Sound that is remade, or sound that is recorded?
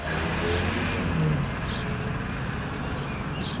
recorded